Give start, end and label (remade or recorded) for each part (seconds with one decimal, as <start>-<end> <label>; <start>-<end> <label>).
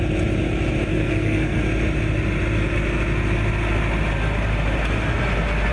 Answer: 0.0-0.9 recorded; 0.9-1.6 remade; 1.6-5.7 recorded